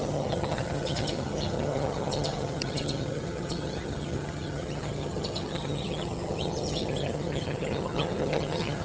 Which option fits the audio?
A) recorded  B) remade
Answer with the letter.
B